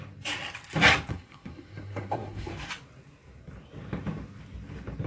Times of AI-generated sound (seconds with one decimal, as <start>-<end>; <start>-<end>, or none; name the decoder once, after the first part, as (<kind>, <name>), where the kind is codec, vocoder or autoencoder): 1.1-2.5 (codec, SNAC)